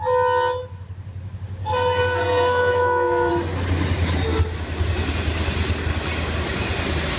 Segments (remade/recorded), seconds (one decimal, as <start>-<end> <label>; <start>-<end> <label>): 0.0-1.6 recorded; 1.6-3.3 remade; 3.3-7.2 recorded